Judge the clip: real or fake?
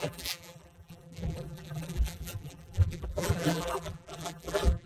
fake